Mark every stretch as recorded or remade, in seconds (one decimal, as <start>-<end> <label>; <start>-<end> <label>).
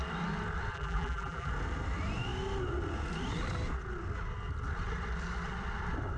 0.0-0.7 recorded; 0.7-1.5 remade; 1.5-6.2 recorded